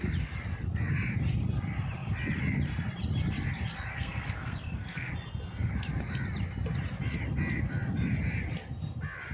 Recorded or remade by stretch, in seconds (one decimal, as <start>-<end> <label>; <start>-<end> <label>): 0.0-3.9 recorded; 3.9-5.1 remade; 5.1-9.3 recorded

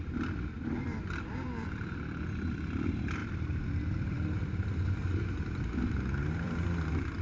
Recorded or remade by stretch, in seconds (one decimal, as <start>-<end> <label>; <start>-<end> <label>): 0.0-7.2 remade

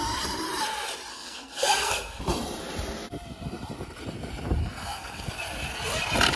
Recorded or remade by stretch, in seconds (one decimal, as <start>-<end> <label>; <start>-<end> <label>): 0.0-1.1 recorded; 1.1-2.2 remade; 2.2-4.6 recorded; 4.6-5.3 remade; 5.3-6.4 recorded

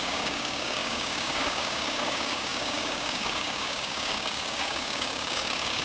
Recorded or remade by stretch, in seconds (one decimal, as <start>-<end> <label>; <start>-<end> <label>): 0.0-5.8 remade

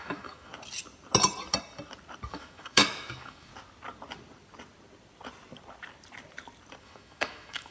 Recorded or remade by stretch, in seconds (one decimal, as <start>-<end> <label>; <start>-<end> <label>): 0.0-0.5 remade; 0.5-2.3 recorded; 2.3-3.5 remade; 3.5-6.8 recorded; 6.8-7.7 remade

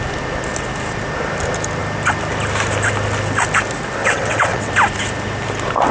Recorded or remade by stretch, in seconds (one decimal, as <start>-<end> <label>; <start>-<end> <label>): 0.0-4.0 recorded; 4.0-4.7 remade; 4.7-5.9 recorded

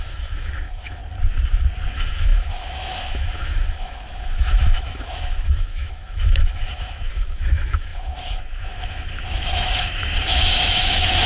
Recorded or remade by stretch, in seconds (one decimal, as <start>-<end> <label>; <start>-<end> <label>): 0.0-1.0 remade; 1.0-1.9 recorded; 1.9-11.3 remade

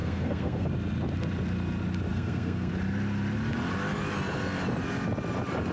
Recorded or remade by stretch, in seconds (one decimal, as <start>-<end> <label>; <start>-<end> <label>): 0.0-0.7 remade; 0.7-2.1 recorded; 2.1-2.7 remade; 2.7-5.7 recorded